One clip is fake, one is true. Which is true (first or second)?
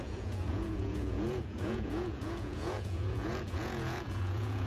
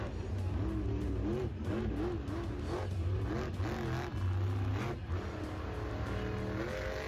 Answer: second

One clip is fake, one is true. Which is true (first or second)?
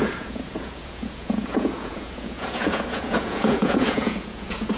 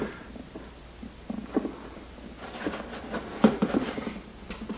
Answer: second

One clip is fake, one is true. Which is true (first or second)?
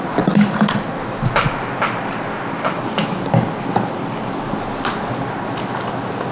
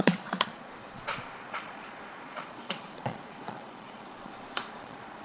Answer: first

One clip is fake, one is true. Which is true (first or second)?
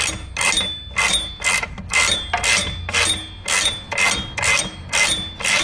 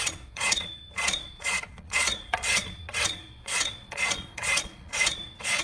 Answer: first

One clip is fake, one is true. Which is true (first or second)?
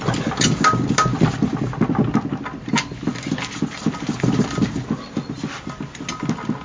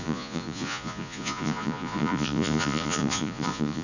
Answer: first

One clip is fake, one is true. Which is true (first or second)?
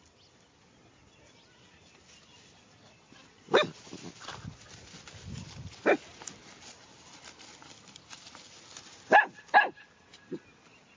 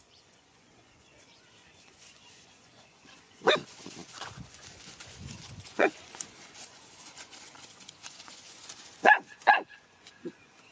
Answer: first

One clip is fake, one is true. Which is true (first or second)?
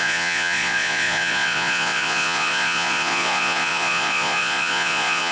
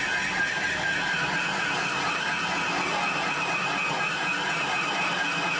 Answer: second